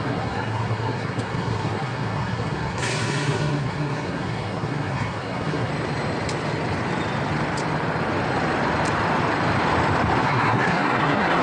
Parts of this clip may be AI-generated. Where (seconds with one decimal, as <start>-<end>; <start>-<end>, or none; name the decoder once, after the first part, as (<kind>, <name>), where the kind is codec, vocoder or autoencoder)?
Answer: 0.0-5.7 (codec, SNAC); 10.2-11.4